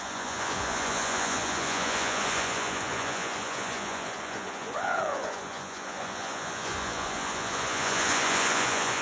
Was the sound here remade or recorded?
remade